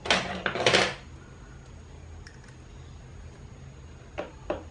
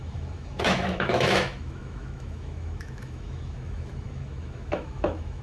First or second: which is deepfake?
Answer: second